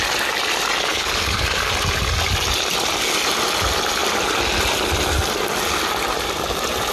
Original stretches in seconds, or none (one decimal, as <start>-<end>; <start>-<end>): 0.0-0.9; 1.7-6.9